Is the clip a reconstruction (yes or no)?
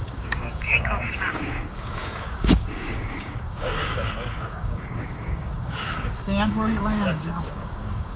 yes